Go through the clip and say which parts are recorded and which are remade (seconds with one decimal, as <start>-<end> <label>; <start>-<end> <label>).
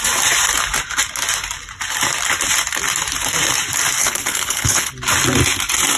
0.0-4.0 recorded; 4.0-4.9 remade; 4.9-6.0 recorded